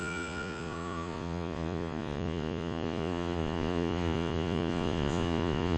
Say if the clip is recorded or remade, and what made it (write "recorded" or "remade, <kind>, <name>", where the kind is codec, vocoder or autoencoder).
remade, vocoder, Vocos